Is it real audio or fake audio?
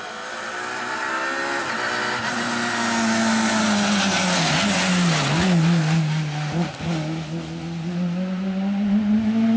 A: real